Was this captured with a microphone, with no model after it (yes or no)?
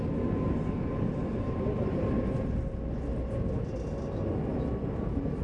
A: yes